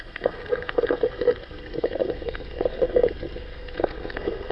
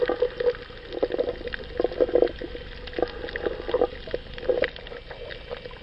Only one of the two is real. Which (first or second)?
second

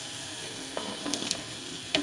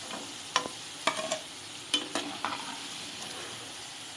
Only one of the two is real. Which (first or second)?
second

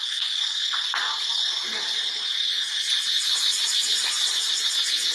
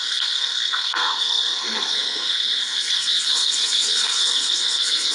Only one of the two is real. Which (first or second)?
first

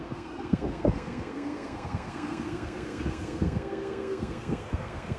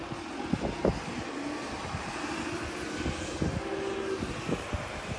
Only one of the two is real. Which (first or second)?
second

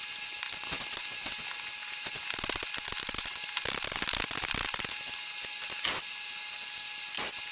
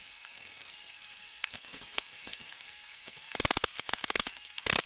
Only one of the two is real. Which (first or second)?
first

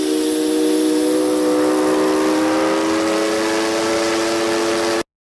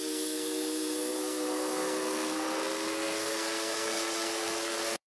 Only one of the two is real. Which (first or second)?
first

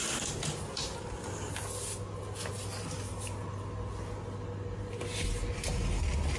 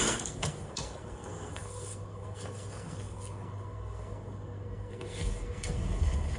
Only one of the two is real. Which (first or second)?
first